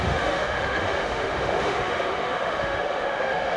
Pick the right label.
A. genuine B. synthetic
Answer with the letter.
B